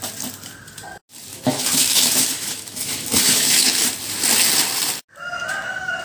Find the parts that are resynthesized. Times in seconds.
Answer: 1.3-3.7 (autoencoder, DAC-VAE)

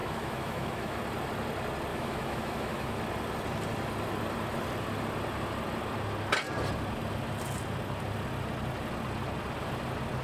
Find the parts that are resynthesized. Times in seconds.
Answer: 0.0-1.0 (autoencoder, DAC-VAE); 1.9-3.0

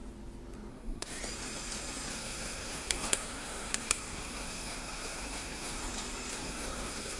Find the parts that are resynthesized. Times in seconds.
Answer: 0.7-1.2 (codec, SNAC); 2.1-5.8; 6.3-7.2

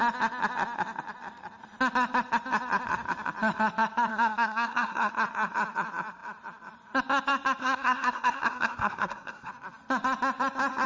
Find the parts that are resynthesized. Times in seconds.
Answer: 4.1-5.1 (codec, SNAC); 7.6-9.5